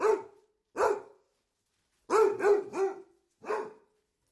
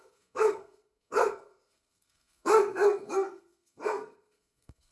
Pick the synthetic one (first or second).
second